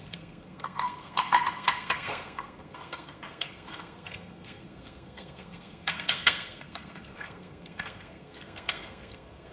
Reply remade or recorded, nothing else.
remade